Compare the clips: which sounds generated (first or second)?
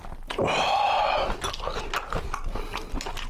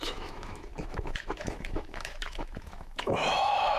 second